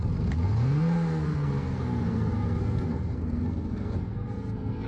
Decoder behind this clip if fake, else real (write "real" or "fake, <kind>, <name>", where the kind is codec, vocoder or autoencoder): fake, codec, SNAC